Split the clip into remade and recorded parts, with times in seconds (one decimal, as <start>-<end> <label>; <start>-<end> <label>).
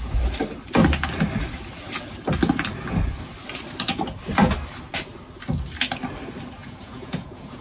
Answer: 0.0-6.6 recorded; 6.6-7.6 remade